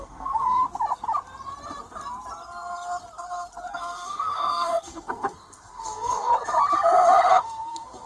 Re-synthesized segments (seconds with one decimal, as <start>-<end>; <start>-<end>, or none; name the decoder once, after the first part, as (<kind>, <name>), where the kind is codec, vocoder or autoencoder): 0.0-0.6 (codec, SNAC); 3.7-6.3; 7.3-8.1